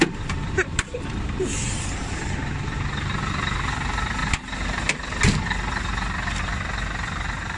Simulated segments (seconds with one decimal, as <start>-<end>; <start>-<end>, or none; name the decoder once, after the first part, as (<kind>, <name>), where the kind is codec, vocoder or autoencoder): 0.4-3.3 (vocoder, BigVGAN v2); 4.2-5.2

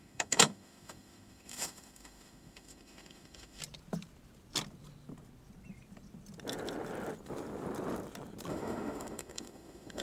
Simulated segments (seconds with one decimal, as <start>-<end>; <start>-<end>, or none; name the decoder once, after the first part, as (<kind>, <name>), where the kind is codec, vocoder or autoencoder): 0.0-3.6 (autoencoder, DAC-VAE); 8.5-10.0

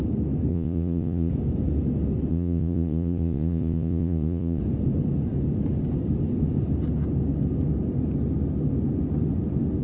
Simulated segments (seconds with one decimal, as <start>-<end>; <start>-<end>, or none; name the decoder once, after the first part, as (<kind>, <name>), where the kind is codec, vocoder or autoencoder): 0.5-1.3 (vocoder, Vocos); 2.3-4.6

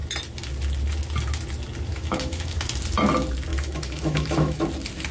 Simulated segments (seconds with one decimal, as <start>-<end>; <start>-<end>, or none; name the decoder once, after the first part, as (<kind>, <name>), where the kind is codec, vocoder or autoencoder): 1.9-2.6 (autoencoder, DAC-VAE); 3.5-4.6